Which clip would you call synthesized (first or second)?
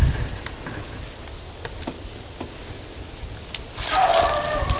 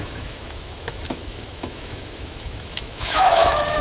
second